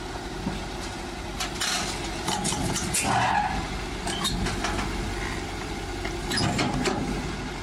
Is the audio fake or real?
real